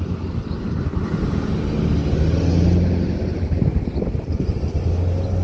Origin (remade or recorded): recorded